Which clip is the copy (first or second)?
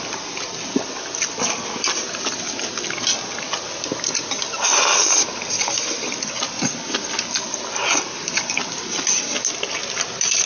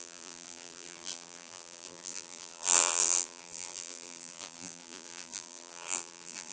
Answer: second